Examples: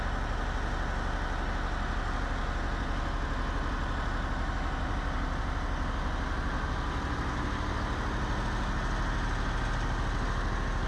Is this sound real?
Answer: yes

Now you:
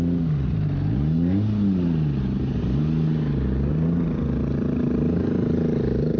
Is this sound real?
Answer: yes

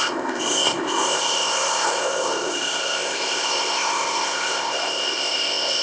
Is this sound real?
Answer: no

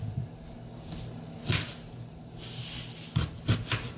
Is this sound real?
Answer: yes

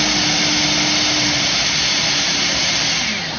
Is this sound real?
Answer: yes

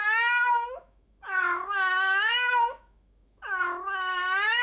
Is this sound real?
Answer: no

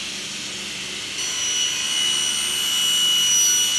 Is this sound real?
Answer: yes